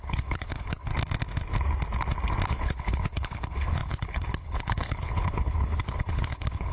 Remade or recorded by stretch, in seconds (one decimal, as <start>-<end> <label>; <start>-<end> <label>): 0.0-0.9 remade; 0.9-2.5 recorded; 2.5-6.7 remade